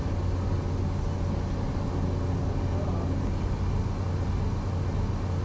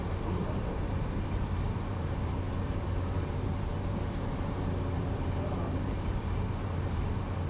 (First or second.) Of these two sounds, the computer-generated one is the second